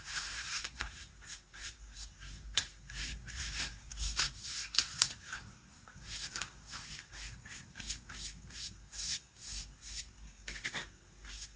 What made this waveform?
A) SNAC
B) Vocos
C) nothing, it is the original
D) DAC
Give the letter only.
A